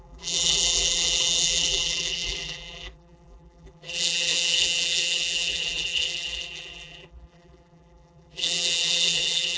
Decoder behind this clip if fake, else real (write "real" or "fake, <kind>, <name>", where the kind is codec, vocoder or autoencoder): fake, vocoder, BigVGAN v2